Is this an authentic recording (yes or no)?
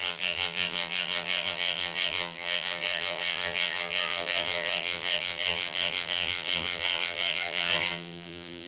no